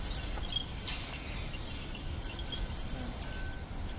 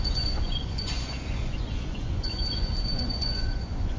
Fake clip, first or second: second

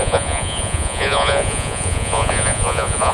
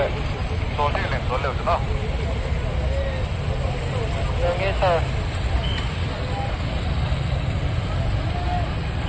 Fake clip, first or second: first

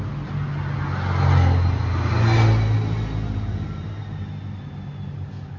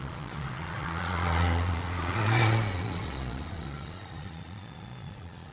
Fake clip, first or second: second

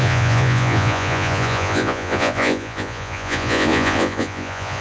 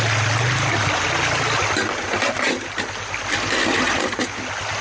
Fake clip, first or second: first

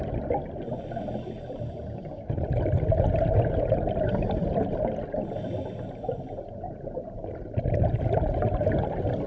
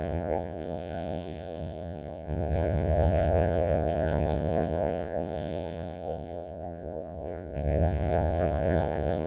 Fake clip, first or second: second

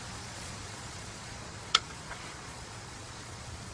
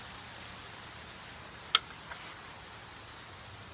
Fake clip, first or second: first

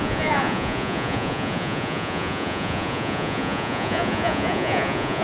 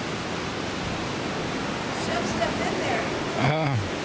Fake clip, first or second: first